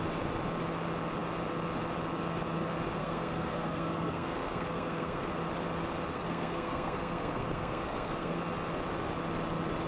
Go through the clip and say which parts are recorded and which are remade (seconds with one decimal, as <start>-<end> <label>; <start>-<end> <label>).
0.0-3.0 recorded; 3.0-5.3 remade; 5.3-6.1 recorded; 6.1-8.4 remade; 8.4-9.9 recorded